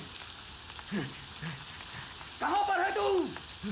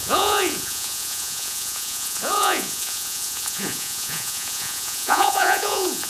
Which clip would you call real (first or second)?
first